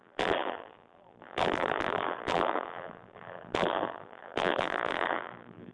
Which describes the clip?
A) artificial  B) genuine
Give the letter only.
A